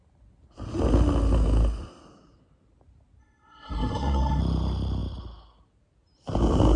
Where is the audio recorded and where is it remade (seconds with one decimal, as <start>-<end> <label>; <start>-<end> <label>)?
0.0-3.2 recorded; 3.2-4.4 remade; 4.4-6.8 recorded